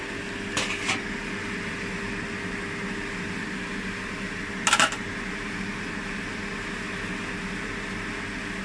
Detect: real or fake real